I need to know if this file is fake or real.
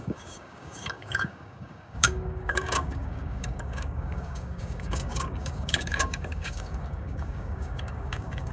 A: fake